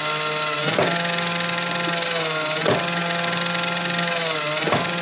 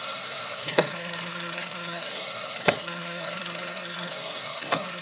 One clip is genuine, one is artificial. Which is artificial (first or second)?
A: second